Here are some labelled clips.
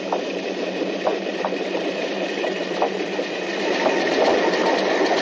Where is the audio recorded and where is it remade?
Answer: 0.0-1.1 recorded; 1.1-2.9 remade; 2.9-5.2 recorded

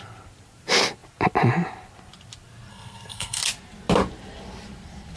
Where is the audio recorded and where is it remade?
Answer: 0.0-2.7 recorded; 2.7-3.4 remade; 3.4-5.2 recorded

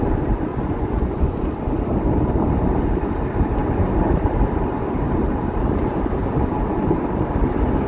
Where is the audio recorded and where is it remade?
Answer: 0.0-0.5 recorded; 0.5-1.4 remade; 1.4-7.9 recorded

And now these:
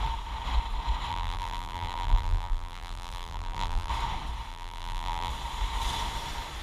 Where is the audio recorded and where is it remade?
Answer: 0.0-1.1 recorded; 1.1-3.9 remade; 3.9-4.5 recorded; 4.5-5.3 remade; 5.3-6.6 recorded

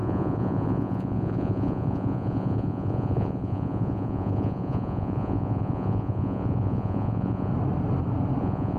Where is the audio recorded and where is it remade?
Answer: 0.0-7.5 remade; 7.5-8.4 recorded; 8.4-8.8 remade

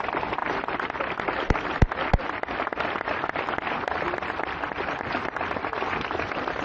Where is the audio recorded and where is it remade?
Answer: 0.0-6.6 recorded

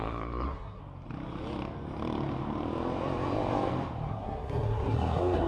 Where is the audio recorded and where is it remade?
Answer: 0.0-0.8 remade; 0.8-4.1 recorded; 4.1-5.5 remade